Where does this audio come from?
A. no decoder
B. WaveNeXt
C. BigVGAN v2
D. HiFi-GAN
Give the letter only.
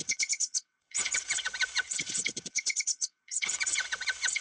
B